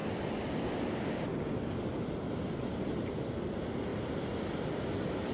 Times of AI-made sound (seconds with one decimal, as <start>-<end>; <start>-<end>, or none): none